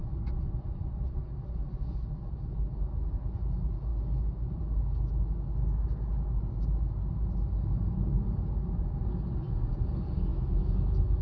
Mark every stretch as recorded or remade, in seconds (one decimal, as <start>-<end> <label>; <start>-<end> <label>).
0.0-10.3 recorded; 10.3-11.2 remade